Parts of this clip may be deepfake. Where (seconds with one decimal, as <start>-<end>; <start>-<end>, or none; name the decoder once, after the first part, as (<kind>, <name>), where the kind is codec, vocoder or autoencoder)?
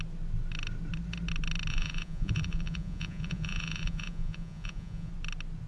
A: 1.7-5.1 (vocoder, Vocos)